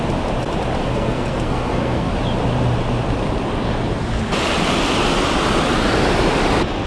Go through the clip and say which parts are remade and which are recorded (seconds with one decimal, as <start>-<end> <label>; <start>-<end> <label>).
0.0-0.8 recorded; 0.8-2.1 remade; 2.1-6.9 recorded

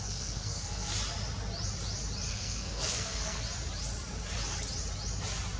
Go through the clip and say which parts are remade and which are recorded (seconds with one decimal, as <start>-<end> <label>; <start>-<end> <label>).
0.0-0.9 remade; 0.9-2.3 recorded; 2.3-3.4 remade; 3.4-5.6 recorded

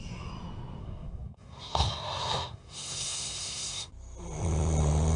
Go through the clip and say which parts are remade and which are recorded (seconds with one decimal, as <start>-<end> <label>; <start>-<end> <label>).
0.0-0.8 recorded; 0.8-3.9 remade; 3.9-5.2 recorded

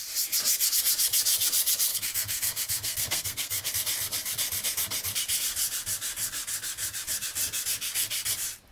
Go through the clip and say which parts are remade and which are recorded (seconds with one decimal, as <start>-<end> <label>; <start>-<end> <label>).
0.0-1.9 recorded; 1.9-3.7 remade; 3.7-8.7 recorded

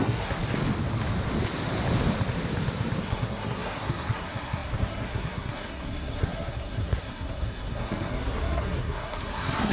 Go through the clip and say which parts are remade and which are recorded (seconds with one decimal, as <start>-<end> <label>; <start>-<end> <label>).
0.0-0.4 remade; 0.4-3.0 recorded; 3.0-9.7 remade